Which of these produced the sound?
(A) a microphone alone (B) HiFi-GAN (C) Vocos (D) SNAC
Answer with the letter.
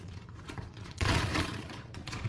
C